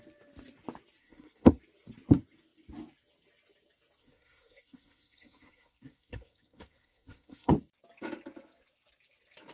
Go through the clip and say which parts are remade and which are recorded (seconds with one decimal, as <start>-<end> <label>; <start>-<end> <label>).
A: 0.0-1.0 recorded; 1.0-1.6 remade; 1.6-4.0 recorded; 4.0-7.5 remade; 7.5-9.5 recorded